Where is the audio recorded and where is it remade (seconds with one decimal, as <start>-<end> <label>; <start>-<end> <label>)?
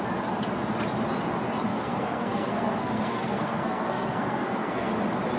0.0-1.7 recorded; 1.7-4.9 remade; 4.9-5.4 recorded